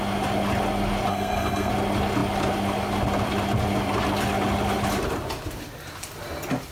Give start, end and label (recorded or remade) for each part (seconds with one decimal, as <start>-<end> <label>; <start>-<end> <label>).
0.0-1.1 recorded; 1.1-1.7 remade; 1.7-6.7 recorded